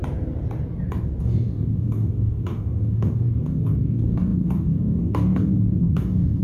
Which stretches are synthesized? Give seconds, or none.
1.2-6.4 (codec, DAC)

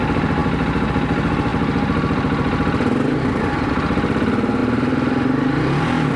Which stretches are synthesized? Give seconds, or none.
none

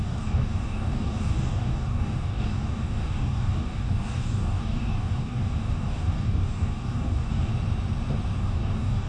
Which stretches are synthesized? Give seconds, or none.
0.0-7.5 (codec, DAC); 8.4-9.1

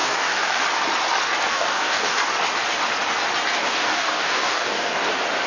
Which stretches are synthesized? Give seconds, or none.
0.0-0.6 (codec, DAC); 1.5-2.3; 3.6-5.1

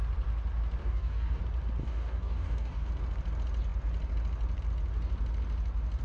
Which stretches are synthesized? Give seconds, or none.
0.8-1.4 (codec, DAC); 1.8-2.9

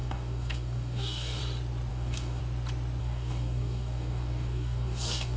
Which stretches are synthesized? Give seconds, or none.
0.0-1.4 (codec, DAC); 1.9-2.4; 3.0-5.4

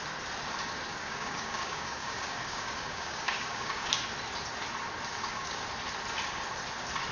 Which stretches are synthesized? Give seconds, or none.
0.9-4.0 (codec, DAC); 5.1-5.6